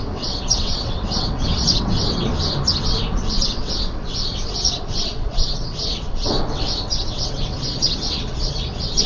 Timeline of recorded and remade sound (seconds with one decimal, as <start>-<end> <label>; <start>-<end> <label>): 0.0-2.3 remade; 2.3-2.8 recorded; 2.8-9.1 remade